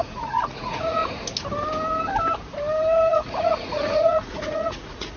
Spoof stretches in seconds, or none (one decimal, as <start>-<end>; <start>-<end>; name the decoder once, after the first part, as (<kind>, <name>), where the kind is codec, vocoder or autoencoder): 0.0-1.0 (vocoder, Vocos); 3.1-5.2